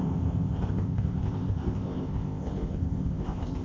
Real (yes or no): no